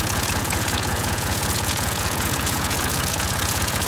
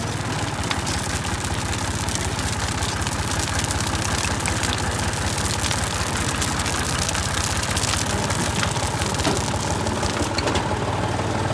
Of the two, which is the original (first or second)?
second